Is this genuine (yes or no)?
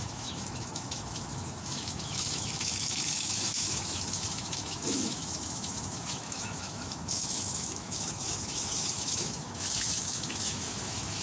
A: no